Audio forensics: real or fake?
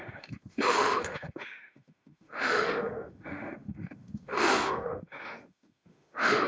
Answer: fake